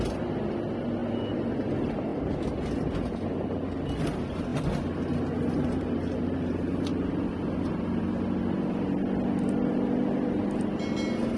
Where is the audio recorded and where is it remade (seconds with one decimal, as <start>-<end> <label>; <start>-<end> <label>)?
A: 0.0-11.4 recorded